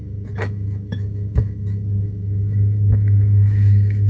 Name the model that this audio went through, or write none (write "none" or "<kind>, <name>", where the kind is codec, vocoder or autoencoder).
autoencoder, DAC-VAE